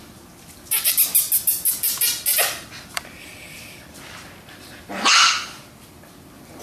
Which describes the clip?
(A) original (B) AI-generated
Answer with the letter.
A